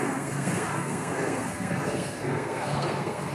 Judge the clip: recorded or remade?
remade